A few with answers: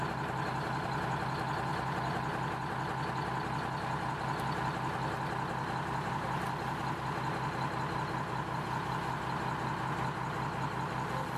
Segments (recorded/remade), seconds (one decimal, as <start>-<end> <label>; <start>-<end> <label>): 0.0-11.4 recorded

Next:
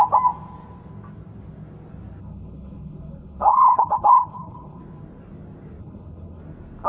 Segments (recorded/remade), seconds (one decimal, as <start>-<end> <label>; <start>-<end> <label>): 0.0-2.2 recorded; 2.2-4.8 remade; 4.8-5.8 recorded; 5.8-6.4 remade; 6.4-6.9 recorded

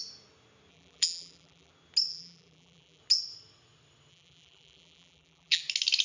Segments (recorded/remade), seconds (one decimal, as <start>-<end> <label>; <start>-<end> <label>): 0.0-0.7 recorded; 0.7-1.7 remade; 1.7-2.1 recorded; 2.1-3.0 remade; 3.0-4.1 recorded; 4.1-5.6 remade; 5.6-6.0 recorded

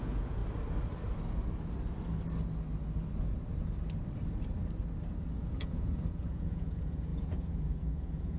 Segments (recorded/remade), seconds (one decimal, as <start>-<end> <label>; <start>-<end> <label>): 0.0-0.4 remade; 0.4-5.4 recorded; 5.4-8.4 remade

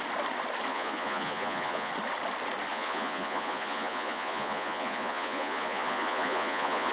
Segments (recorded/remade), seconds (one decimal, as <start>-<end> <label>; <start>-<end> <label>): 0.0-0.7 recorded; 0.7-1.9 remade; 1.9-2.7 recorded; 2.7-6.9 remade

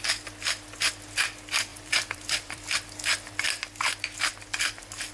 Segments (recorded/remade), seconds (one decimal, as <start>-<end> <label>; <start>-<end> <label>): 0.0-1.7 recorded; 1.7-2.8 remade; 2.8-5.1 recorded

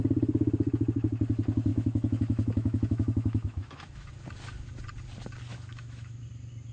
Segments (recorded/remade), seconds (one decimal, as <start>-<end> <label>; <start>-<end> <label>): 0.0-1.7 recorded; 1.7-4.1 remade; 4.1-5.5 recorded; 5.5-6.2 remade; 6.2-6.7 recorded

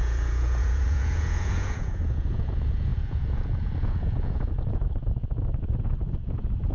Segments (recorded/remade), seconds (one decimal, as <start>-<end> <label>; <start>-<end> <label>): 0.0-6.7 remade